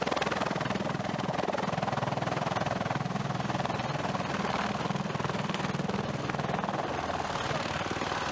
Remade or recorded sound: recorded